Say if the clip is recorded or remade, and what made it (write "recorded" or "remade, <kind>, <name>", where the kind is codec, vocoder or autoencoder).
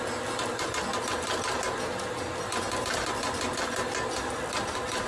recorded